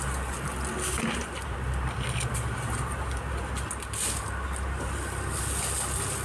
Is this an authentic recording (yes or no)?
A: yes